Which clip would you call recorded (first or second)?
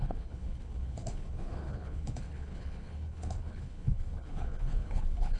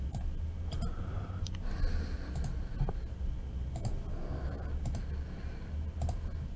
second